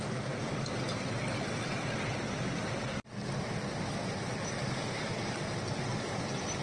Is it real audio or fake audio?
real